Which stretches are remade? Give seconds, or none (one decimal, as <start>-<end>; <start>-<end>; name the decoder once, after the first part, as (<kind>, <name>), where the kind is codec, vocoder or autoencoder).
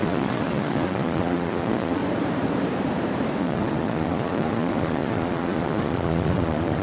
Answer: 0.0-2.0 (vocoder, Vocos); 3.4-6.8